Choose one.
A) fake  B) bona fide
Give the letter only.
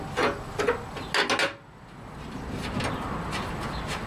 B